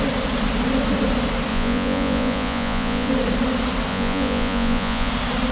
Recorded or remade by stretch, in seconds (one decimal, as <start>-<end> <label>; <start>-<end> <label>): 0.0-1.5 recorded; 1.5-3.1 remade; 3.1-3.9 recorded; 3.9-5.1 remade; 5.1-5.5 recorded